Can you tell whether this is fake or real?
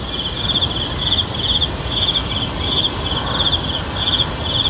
real